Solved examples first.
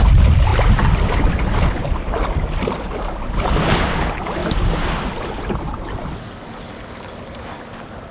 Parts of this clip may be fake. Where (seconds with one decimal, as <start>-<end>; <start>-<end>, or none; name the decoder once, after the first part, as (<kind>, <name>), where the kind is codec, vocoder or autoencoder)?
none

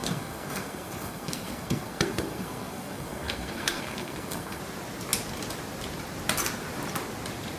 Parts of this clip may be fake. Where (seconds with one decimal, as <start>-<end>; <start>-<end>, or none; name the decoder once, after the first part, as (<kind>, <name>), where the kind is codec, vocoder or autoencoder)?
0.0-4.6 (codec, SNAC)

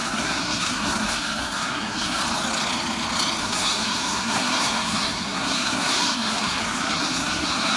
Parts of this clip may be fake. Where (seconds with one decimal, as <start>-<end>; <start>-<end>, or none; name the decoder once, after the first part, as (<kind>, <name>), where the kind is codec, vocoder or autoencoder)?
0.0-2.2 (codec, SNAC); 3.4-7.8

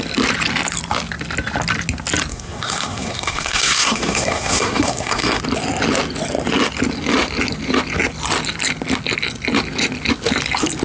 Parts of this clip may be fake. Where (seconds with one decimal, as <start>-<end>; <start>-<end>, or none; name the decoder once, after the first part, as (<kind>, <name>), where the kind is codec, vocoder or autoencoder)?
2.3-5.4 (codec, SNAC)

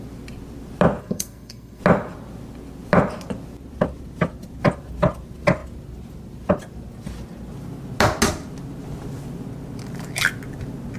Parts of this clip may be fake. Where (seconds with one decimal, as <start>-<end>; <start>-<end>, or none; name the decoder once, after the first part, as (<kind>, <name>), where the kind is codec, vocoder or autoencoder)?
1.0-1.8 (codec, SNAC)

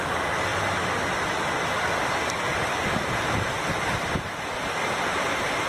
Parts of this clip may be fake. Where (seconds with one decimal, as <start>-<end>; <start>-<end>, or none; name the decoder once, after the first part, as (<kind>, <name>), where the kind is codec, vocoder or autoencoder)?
none